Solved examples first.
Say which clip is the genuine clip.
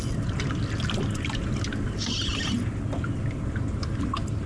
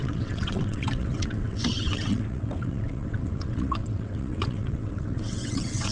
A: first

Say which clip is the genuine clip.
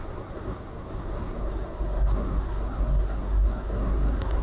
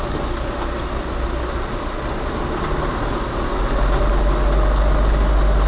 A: second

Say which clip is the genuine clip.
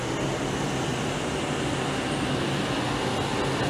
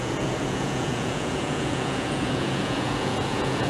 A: first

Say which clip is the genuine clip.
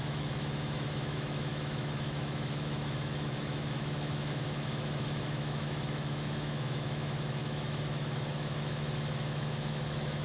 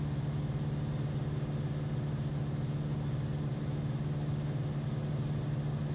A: second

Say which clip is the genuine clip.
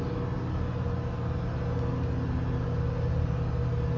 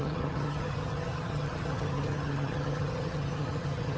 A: first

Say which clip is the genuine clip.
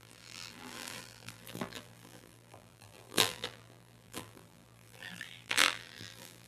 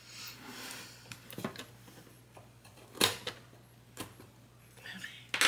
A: second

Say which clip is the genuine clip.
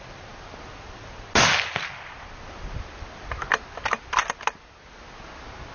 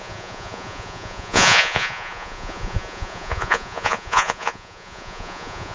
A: first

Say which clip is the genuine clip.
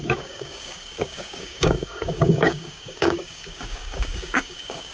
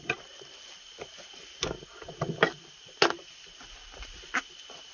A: second